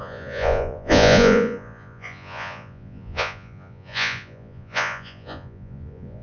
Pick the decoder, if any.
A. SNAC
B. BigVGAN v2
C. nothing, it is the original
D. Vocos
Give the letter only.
D